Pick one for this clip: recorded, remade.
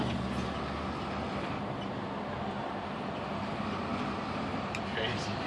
recorded